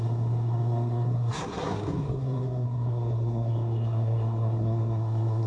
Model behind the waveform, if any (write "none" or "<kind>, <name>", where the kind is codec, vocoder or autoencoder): codec, SNAC